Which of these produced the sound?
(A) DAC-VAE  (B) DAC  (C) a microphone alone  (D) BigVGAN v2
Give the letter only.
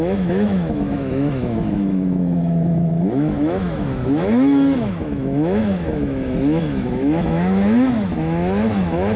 A